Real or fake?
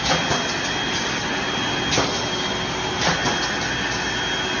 real